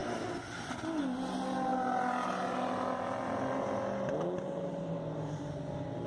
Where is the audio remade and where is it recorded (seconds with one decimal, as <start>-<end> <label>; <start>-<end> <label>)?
0.0-6.1 recorded

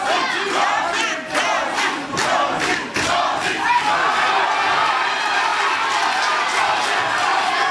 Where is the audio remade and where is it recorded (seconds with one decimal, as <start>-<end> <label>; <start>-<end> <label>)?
0.0-7.7 recorded

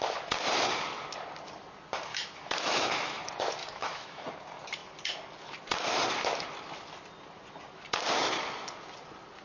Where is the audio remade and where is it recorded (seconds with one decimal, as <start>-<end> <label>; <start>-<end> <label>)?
0.0-2.1 recorded; 2.1-3.2 remade; 3.2-3.6 recorded; 3.6-4.3 remade; 4.3-9.4 recorded

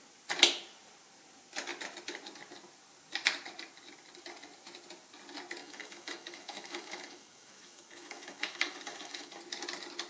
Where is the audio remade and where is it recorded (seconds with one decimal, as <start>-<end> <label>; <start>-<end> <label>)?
0.0-5.6 recorded; 5.6-9.4 remade; 9.4-10.1 recorded

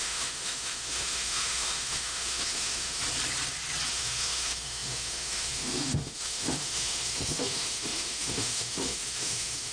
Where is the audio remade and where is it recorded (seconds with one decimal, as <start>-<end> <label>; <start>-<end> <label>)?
0.0-3.0 remade; 3.0-3.9 recorded; 3.9-9.7 remade

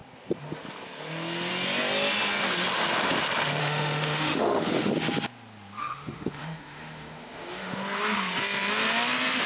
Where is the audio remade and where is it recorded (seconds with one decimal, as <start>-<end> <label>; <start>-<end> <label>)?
0.0-3.6 recorded; 3.6-4.9 remade; 4.9-5.8 recorded; 5.8-7.8 remade; 7.8-9.5 recorded

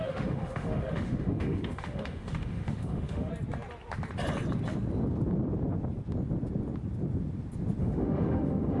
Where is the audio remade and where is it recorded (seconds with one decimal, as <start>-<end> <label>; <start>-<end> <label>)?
0.0-3.3 remade; 3.3-7.8 recorded; 7.8-8.8 remade

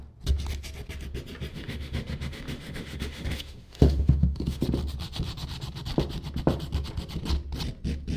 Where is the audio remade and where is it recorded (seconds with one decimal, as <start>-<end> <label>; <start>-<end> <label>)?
0.0-1.5 recorded; 1.5-4.6 remade; 4.6-8.2 recorded